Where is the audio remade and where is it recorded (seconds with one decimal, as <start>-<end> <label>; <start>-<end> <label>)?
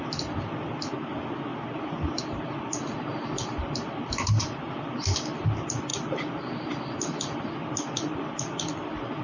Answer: 0.0-1.5 recorded; 1.5-2.2 remade; 2.2-9.2 recorded